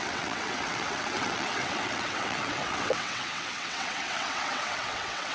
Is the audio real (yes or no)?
no